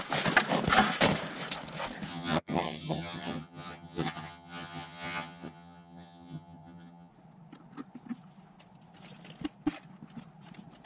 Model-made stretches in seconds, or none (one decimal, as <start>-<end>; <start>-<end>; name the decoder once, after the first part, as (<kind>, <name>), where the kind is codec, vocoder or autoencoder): 2.1-7.1 (vocoder, HiFi-GAN)